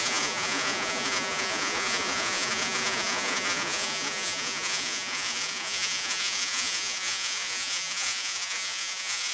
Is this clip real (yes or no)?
no